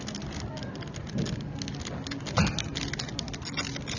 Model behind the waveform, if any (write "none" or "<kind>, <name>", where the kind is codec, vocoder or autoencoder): none